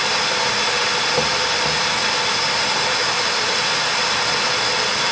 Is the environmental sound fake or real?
real